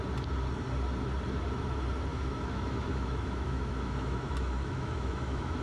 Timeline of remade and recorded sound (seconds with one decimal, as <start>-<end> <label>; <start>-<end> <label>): 0.0-2.1 recorded; 2.1-5.6 remade